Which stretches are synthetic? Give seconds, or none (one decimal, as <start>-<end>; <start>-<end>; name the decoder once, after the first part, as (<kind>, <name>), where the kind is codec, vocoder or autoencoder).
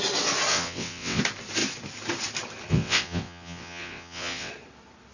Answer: 0.5-1.2 (vocoder, WaveNeXt); 2.7-4.5